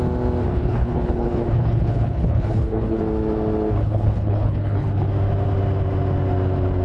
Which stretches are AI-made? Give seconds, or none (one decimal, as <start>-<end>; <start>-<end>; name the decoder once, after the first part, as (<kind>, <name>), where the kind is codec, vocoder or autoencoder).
0.5-3.0 (codec, HILCodec); 3.8-5.1